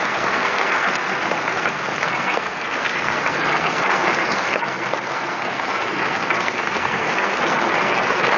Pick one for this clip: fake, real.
fake